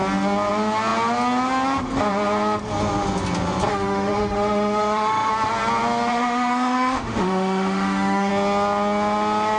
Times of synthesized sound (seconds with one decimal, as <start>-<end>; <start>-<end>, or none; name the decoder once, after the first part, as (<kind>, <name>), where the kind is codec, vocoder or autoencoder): 3.7-5.3 (autoencoder, DAC-VAE); 6.1-8.3